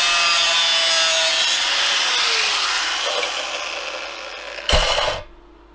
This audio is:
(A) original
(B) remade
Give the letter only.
A